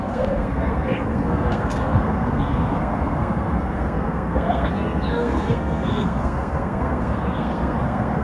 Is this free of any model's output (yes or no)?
no